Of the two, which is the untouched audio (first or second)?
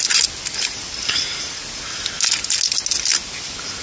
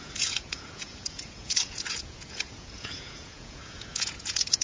first